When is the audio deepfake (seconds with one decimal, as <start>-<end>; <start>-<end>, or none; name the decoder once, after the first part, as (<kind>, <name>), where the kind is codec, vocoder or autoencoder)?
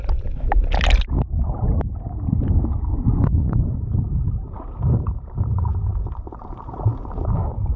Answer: 2.9-3.9 (vocoder, Vocos)